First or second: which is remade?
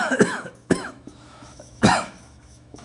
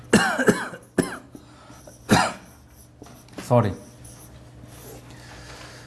first